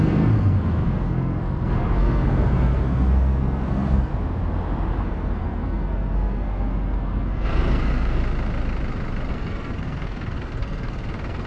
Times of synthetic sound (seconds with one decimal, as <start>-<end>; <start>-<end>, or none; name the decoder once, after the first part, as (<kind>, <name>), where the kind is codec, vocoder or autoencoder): 0.0-4.1 (codec, SNAC); 5.0-8.2; 9.3-11.5